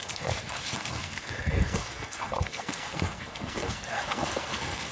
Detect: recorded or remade remade